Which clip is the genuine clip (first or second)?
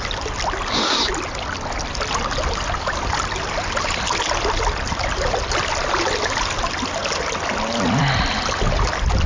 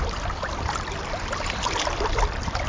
first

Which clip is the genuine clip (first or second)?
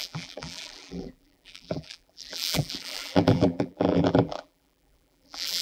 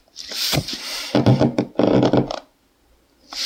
second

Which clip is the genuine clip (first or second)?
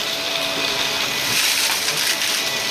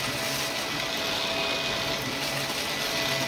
second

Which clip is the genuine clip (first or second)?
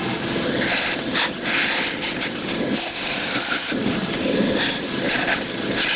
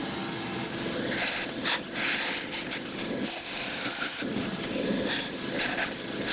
second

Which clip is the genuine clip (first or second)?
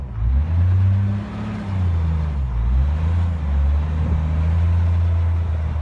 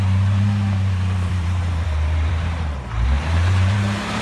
first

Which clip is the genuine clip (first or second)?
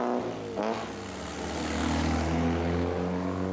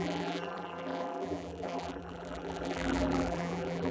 first